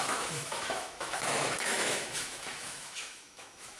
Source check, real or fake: fake